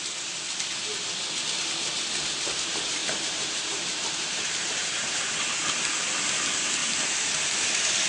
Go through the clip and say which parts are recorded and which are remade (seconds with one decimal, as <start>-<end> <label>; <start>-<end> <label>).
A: 0.0-3.0 recorded; 3.0-5.4 remade; 5.4-6.8 recorded; 6.8-8.1 remade